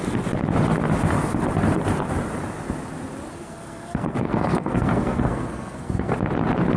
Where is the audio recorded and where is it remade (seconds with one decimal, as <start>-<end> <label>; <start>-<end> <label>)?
0.0-3.3 recorded; 3.3-6.1 remade; 6.1-6.8 recorded